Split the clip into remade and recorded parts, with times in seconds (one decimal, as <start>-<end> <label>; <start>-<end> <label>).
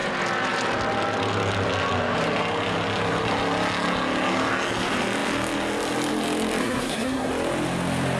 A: 0.0-6.6 recorded; 6.6-7.3 remade; 7.3-8.2 recorded